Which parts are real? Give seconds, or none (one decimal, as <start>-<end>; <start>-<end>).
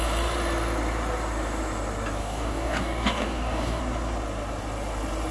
0.0-2.2; 3.8-5.3